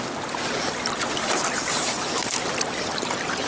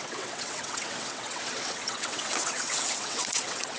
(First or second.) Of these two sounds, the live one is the first